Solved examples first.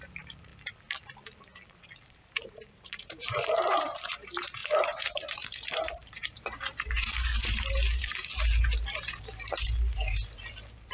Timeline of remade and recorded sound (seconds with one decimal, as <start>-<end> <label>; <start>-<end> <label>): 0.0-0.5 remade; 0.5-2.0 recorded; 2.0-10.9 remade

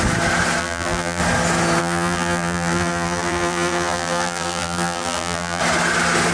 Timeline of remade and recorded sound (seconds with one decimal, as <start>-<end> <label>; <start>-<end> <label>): 0.0-0.6 recorded; 0.6-1.2 remade; 1.2-1.8 recorded; 1.8-5.6 remade; 5.6-6.3 recorded

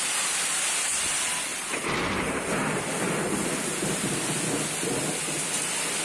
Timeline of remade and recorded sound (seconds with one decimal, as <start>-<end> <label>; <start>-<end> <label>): 0.0-1.5 recorded; 1.5-2.3 remade; 2.3-6.0 recorded

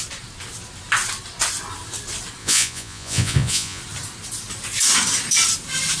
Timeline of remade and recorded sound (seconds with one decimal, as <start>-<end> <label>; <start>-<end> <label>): 0.0-2.4 recorded; 2.4-3.8 remade; 3.8-6.0 recorded